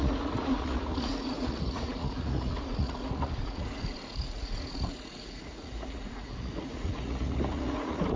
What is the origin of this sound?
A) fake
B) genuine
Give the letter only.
A